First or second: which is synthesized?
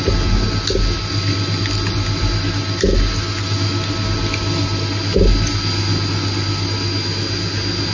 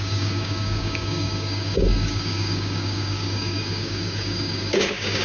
second